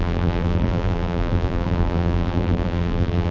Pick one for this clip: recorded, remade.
remade